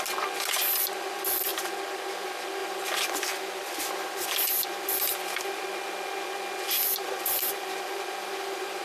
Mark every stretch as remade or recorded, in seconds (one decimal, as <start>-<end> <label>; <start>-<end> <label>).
0.0-2.6 recorded; 2.6-5.6 remade; 5.6-7.0 recorded; 7.0-8.8 remade